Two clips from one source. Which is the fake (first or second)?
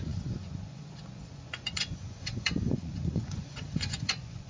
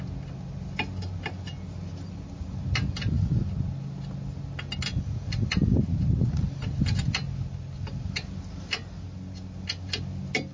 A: first